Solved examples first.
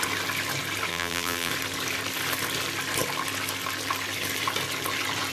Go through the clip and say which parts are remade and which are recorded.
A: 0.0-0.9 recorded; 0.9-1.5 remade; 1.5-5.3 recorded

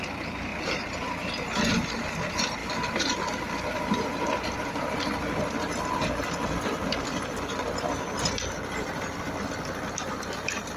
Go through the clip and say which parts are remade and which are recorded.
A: 0.0-0.5 recorded; 0.5-1.3 remade; 1.3-2.6 recorded; 2.6-7.4 remade; 7.4-10.8 recorded